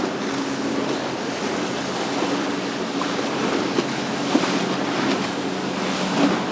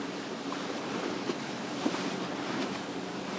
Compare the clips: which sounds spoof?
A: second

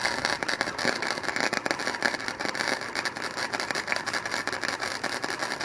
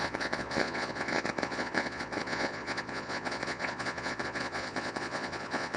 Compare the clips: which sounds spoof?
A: second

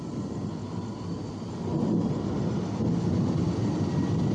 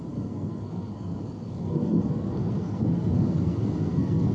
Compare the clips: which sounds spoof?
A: second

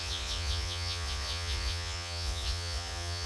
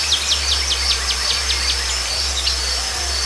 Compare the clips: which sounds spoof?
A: first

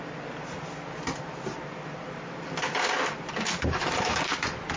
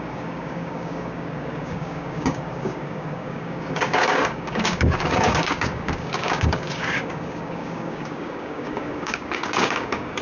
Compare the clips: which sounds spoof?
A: second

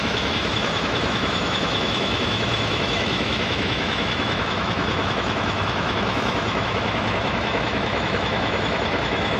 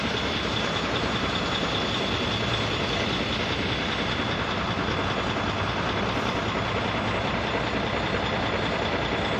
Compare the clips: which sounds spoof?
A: first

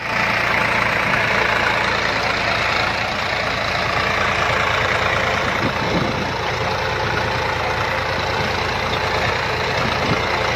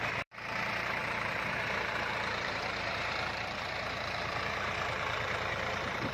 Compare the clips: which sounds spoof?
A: second